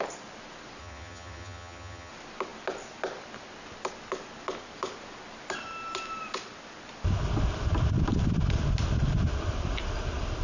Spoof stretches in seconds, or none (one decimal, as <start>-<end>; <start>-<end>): 0.8-2.1